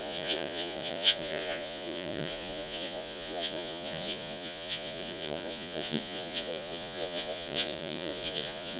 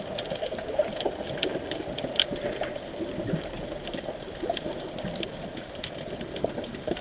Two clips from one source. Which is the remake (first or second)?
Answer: first